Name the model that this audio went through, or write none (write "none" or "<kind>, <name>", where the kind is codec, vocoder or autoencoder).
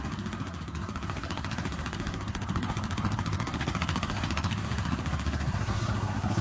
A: codec, SNAC